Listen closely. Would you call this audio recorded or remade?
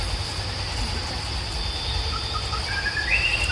recorded